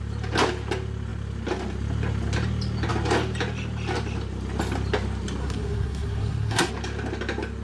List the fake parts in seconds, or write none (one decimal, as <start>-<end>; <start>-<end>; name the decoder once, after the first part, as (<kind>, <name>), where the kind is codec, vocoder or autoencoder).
5.4-6.7 (codec, SNAC)